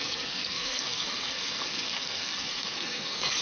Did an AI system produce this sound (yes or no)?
yes